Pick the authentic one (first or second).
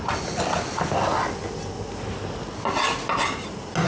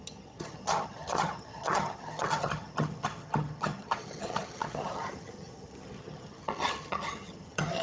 first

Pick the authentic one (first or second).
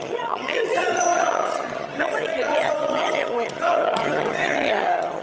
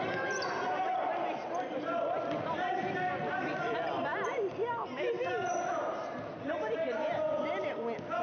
second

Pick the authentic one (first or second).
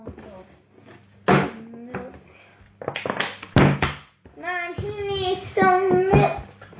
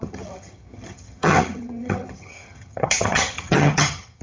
first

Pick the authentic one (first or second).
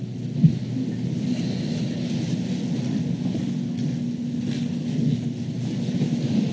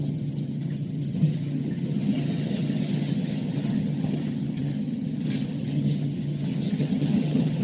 first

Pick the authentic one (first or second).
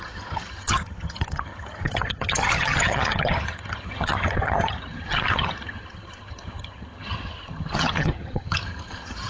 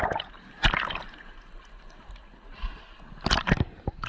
second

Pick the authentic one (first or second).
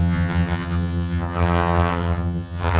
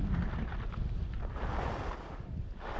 second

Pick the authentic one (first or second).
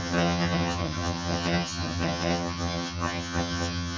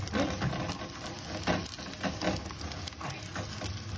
second